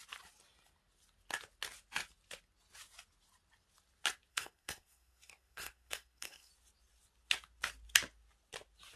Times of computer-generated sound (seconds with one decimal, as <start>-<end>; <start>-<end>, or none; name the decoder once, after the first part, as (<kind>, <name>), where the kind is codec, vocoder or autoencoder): 4.3-6.5 (codec, SNAC)